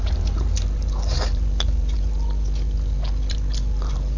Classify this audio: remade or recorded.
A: recorded